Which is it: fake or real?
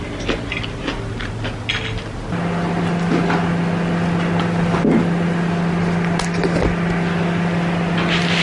real